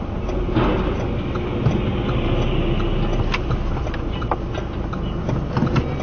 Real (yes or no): yes